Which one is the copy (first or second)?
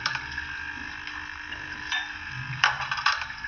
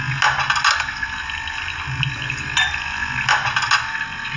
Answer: first